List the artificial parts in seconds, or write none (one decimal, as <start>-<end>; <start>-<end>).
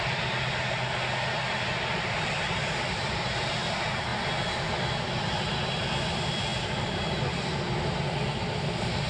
none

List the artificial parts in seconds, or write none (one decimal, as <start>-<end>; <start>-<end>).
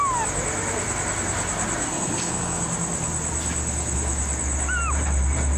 1.8-2.6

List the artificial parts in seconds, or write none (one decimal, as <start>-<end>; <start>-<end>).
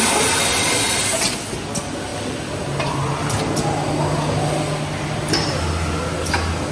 none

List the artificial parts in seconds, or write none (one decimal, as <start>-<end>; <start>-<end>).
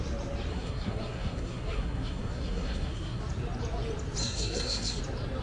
0.5-3.2; 4.2-5.0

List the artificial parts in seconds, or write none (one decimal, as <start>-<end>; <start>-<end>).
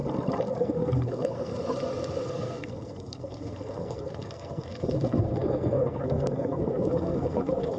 0.6-1.5; 2.3-7.8